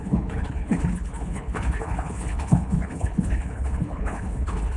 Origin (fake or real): fake